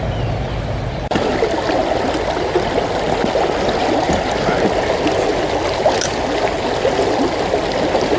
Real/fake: real